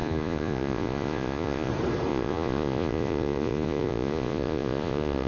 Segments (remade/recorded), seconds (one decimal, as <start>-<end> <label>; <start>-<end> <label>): 0.0-1.7 remade; 1.7-2.1 recorded; 2.1-5.3 remade